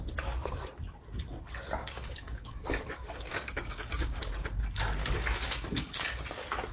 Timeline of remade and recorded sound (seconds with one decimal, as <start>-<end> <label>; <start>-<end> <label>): 0.0-1.8 recorded; 1.8-4.2 remade; 4.2-5.0 recorded; 5.0-6.2 remade; 6.2-6.7 recorded